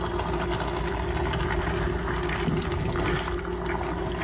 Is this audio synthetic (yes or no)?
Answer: no